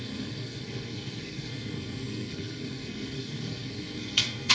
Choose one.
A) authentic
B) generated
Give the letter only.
B